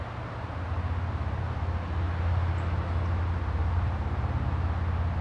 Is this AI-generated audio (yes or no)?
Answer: no